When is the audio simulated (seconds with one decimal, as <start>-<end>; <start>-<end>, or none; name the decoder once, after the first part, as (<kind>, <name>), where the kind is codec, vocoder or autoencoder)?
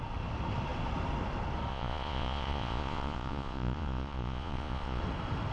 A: 1.7-5.0 (vocoder, Vocos)